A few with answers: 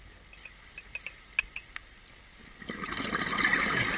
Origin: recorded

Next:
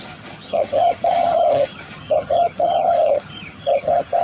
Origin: remade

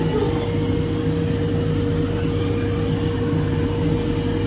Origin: recorded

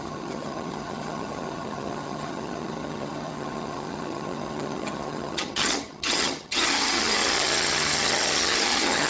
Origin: remade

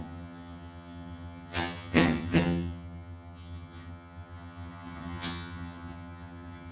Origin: remade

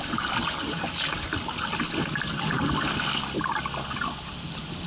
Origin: recorded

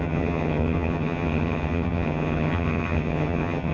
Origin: remade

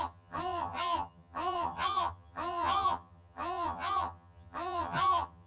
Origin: remade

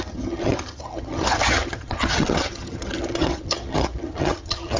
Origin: remade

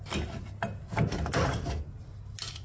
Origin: recorded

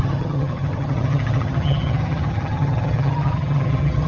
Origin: remade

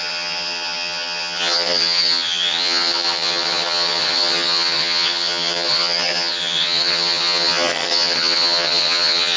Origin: remade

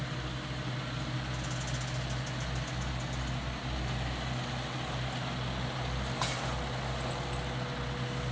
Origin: recorded